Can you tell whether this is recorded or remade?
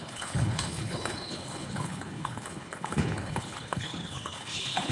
remade